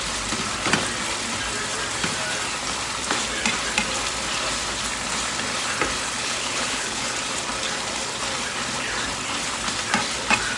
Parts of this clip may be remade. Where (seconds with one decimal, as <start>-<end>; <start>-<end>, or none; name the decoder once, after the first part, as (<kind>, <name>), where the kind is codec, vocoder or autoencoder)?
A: 6.2-7.1 (codec, HILCodec)